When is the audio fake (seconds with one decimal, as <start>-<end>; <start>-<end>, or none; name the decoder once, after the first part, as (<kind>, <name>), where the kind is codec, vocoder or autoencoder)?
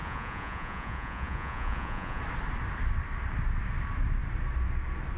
0.0-2.2 (vocoder, Vocos)